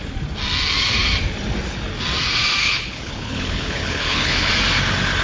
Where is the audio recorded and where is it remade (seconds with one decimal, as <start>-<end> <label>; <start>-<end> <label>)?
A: 0.0-2.6 recorded; 2.6-4.5 remade; 4.5-5.2 recorded